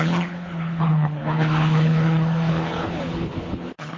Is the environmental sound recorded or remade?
remade